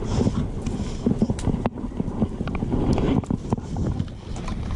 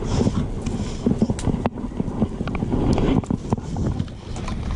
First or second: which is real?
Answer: second